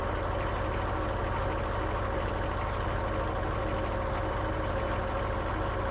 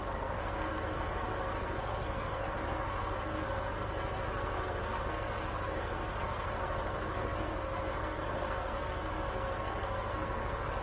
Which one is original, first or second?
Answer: first